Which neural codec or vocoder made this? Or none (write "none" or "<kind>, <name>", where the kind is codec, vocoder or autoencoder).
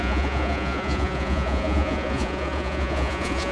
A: vocoder, Vocos